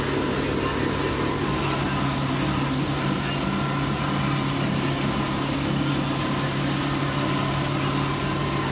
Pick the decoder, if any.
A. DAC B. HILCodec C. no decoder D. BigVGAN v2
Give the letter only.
C